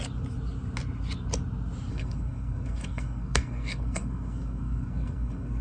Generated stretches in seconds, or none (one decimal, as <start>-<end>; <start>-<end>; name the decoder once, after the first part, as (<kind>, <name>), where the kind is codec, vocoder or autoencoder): 1.9-5.6 (codec, SNAC)